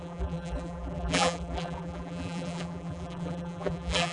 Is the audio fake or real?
fake